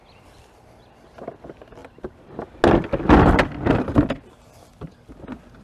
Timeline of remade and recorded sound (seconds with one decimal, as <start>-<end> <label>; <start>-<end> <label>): 0.0-5.6 recorded